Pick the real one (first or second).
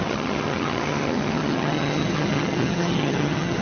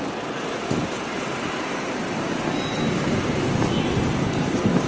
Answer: second